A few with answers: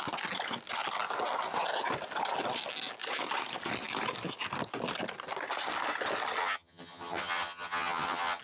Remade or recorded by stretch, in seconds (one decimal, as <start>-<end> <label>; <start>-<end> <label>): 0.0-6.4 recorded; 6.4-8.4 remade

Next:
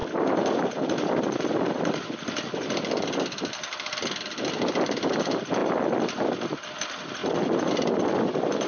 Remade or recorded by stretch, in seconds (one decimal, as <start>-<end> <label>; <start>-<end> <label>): 0.0-8.7 recorded

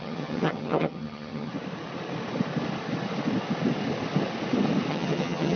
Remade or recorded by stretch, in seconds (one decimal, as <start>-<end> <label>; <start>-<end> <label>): 0.0-1.5 remade; 1.5-4.9 recorded; 4.9-5.6 remade

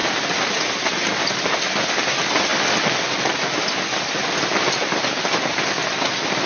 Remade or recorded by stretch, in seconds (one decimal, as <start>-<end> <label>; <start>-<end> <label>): 0.0-6.5 recorded

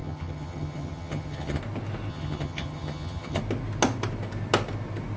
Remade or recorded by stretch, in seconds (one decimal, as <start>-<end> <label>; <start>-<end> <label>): 0.0-1.6 remade; 1.6-2.1 recorded; 2.1-3.4 remade; 3.4-5.2 recorded

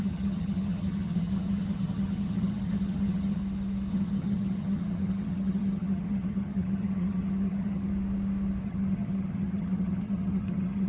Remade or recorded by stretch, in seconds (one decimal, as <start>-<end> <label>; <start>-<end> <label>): 0.0-3.4 remade; 3.4-3.9 recorded; 3.9-7.9 remade; 7.9-8.6 recorded; 8.6-10.9 remade

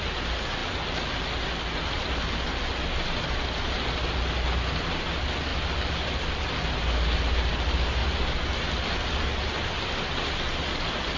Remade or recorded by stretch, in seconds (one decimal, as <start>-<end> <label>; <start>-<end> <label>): 0.0-11.2 recorded